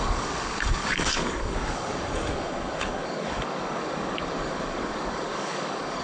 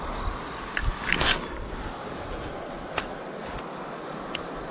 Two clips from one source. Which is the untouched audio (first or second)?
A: second